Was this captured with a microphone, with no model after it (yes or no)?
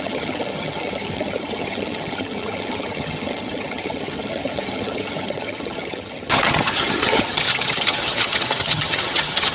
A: no